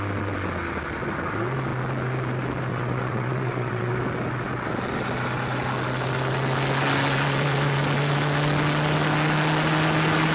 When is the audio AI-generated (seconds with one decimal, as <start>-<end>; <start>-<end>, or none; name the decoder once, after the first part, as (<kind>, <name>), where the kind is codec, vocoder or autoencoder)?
2.7-3.9 (vocoder, WaveNeXt)